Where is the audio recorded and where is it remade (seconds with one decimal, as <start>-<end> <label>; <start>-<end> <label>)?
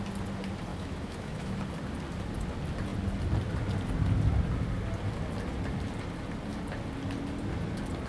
0.0-0.7 recorded; 0.7-1.6 remade; 1.6-8.1 recorded